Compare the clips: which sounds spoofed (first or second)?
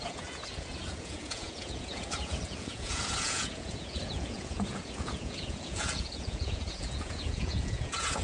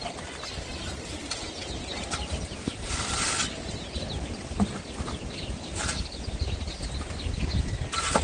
first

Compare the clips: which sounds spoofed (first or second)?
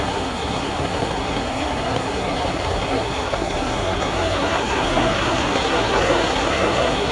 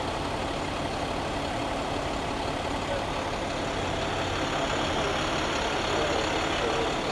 first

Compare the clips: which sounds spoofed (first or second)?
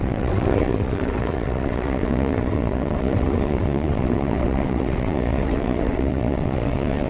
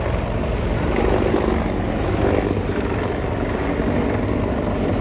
first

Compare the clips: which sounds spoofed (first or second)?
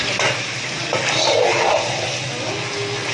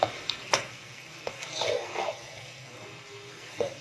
second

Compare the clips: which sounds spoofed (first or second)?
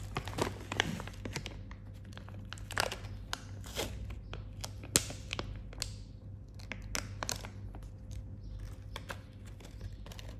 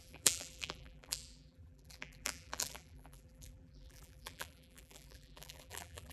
second